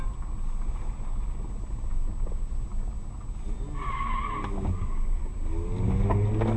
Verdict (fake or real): real